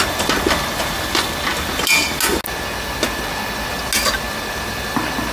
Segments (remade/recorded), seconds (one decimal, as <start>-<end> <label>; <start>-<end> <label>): 0.0-5.3 recorded

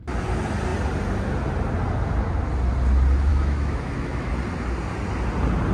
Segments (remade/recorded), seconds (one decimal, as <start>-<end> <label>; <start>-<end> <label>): 0.0-3.3 recorded; 3.3-4.3 remade; 4.3-5.7 recorded